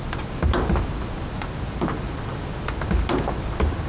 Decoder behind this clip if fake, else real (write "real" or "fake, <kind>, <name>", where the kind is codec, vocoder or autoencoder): real